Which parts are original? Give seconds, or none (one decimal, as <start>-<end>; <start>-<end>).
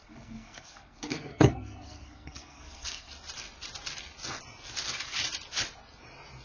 3.1-6.4